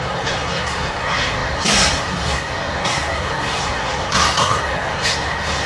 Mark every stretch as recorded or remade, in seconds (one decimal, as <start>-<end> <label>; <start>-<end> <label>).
0.0-5.7 remade